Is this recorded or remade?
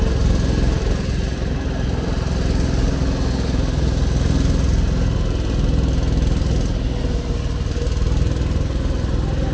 recorded